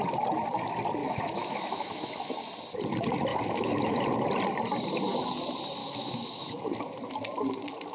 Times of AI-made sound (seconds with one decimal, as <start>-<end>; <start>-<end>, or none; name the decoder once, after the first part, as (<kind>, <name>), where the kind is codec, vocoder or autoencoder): 1.0-2.3 (autoencoder, DAC-VAE); 3.3-4.0; 5.8-6.5